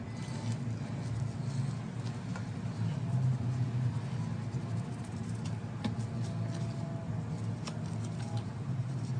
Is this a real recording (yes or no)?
yes